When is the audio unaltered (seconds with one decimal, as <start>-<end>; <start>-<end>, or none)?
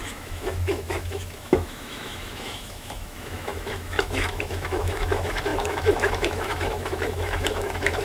none